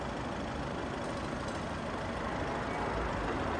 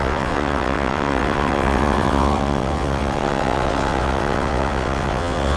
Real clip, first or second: first